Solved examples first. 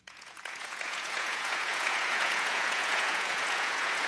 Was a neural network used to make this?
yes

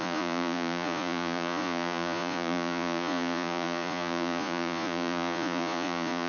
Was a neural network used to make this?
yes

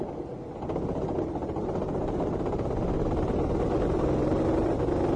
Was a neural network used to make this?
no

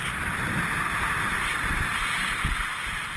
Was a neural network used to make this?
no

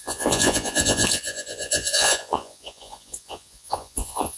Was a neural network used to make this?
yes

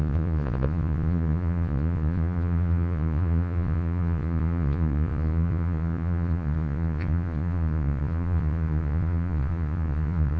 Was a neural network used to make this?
yes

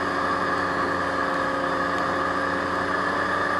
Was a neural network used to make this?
no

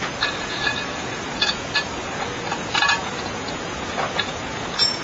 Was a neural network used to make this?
yes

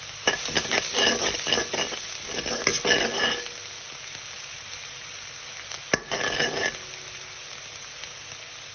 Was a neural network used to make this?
no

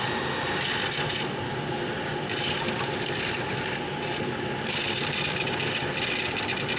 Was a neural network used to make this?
no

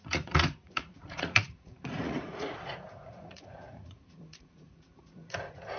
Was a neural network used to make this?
yes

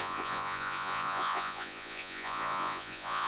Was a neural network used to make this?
yes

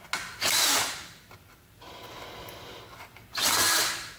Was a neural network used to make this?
no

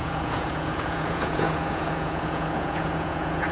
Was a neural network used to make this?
yes